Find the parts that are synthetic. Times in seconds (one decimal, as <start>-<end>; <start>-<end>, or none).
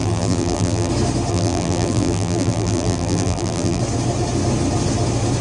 0.0-0.9; 1.3-3.8